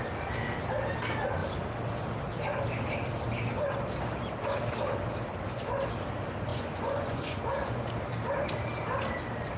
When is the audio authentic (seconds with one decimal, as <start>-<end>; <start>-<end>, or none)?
0.0-6.5; 7.9-9.6